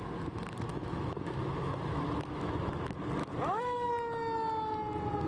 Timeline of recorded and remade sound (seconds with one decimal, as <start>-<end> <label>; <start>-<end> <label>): 0.0-0.7 recorded; 0.7-2.8 remade; 2.8-3.2 recorded; 3.2-3.9 remade; 3.9-5.3 recorded